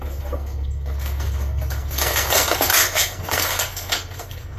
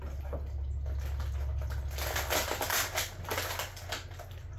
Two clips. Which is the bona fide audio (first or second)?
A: second